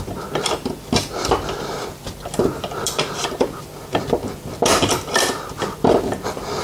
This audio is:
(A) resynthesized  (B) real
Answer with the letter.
B